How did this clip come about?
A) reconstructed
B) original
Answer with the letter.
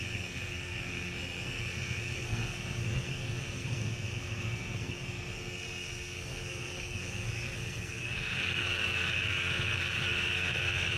A